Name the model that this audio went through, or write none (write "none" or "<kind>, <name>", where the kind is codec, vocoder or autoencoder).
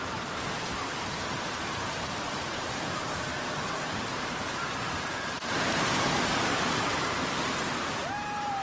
vocoder, BigVGAN v2